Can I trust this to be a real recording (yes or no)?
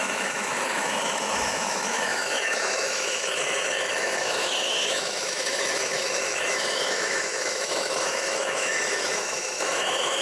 no